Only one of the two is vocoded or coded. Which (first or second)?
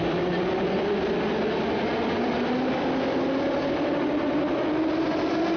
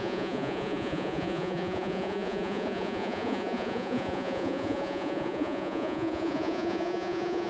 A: second